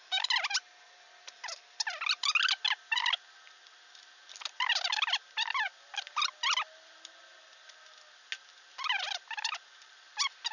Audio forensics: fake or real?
real